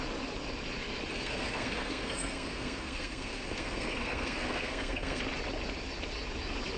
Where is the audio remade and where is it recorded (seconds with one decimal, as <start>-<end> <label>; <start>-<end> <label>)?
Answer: 0.0-1.1 recorded; 1.1-5.2 remade; 5.2-6.8 recorded